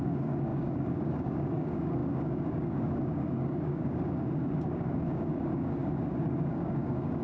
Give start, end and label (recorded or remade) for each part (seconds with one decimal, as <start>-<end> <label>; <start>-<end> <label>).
0.0-7.2 remade